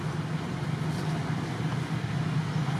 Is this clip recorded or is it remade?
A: recorded